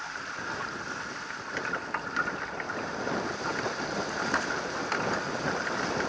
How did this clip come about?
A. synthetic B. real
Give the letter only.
B